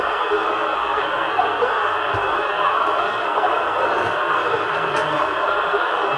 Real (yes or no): no